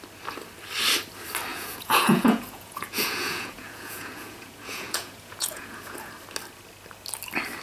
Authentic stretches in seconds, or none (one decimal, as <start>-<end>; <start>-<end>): 0.0-1.5; 6.1-7.6